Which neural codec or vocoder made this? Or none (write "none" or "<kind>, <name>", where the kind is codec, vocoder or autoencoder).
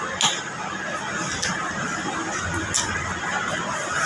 none